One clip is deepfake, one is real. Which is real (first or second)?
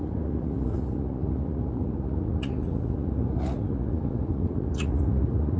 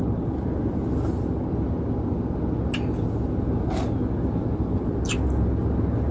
second